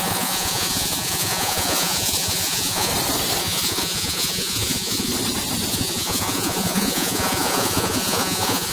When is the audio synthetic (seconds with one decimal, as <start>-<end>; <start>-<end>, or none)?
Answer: 0.0-2.9; 3.4-5.1; 5.7-8.7